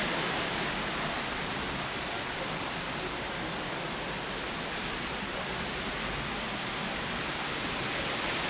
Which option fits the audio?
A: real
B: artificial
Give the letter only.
A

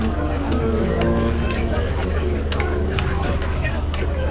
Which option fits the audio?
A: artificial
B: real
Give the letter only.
A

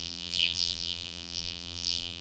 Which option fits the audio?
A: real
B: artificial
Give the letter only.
B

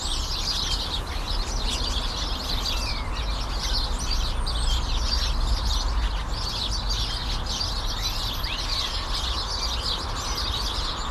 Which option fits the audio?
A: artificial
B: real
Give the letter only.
B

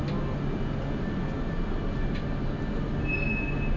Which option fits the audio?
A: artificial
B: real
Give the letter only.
B